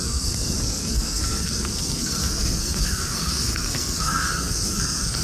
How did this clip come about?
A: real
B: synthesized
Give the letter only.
B